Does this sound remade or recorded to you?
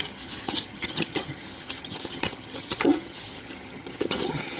remade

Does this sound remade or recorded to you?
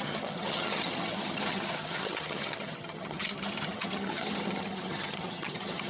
remade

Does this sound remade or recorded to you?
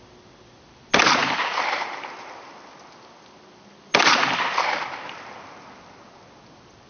recorded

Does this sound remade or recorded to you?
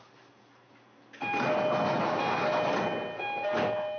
recorded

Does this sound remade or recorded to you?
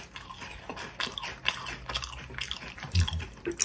recorded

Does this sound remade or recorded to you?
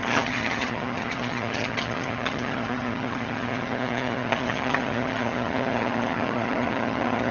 remade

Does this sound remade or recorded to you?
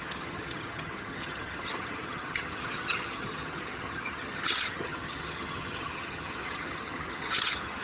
remade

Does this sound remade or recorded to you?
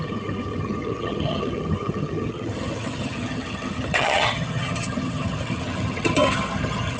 remade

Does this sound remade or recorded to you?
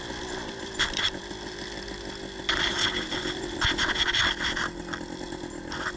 recorded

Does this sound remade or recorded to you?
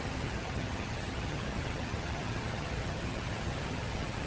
remade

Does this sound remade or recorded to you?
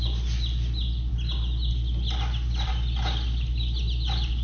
recorded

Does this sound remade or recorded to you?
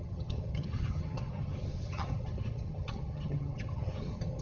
remade